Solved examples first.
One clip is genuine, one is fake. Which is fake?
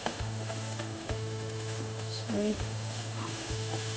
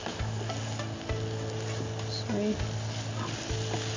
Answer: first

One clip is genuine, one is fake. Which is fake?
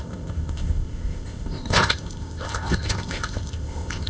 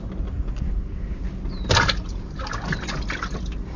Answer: first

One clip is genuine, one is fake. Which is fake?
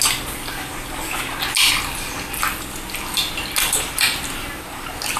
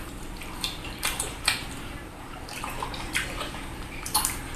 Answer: second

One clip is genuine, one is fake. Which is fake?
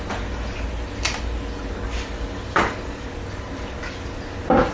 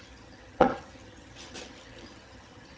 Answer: second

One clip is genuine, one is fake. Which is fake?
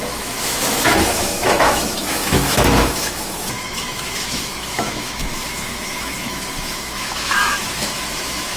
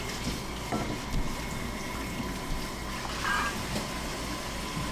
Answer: first